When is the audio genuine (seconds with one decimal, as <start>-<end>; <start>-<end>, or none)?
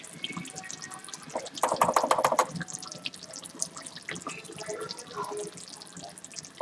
0.0-6.6